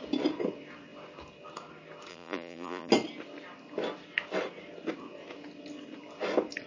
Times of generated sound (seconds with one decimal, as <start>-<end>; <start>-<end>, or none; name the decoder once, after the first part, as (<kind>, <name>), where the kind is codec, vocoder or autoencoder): 2.1-2.9 (vocoder, BigVGAN v2)